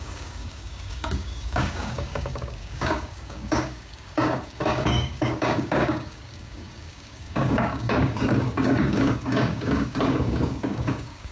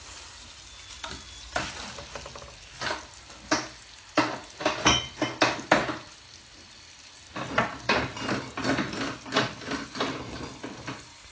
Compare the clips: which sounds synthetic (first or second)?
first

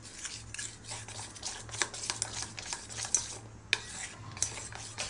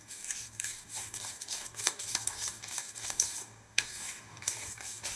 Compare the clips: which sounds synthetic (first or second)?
second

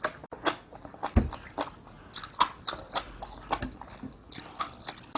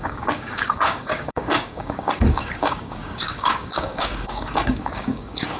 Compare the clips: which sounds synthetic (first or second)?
second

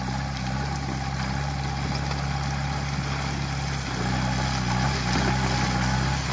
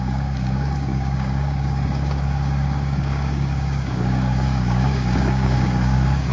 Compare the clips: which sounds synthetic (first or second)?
second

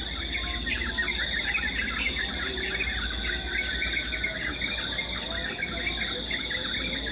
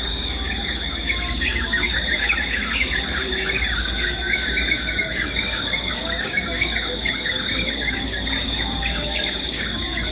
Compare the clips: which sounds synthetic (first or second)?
second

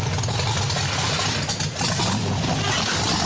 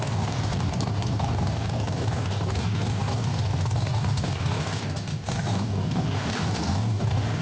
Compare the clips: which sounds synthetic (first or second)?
second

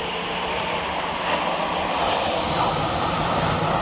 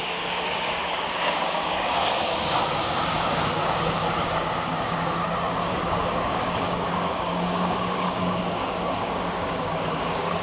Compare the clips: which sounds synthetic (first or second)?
second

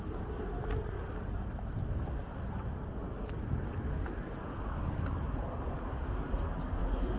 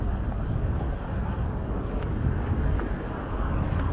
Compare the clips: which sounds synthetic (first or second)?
second